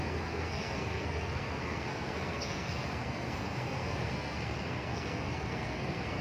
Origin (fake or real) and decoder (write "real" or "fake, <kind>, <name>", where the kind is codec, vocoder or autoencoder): fake, codec, SNAC